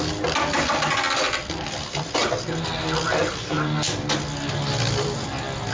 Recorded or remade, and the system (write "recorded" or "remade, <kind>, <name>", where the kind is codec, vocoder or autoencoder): recorded